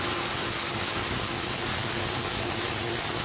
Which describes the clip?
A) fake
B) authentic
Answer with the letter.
B